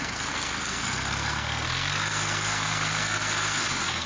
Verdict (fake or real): fake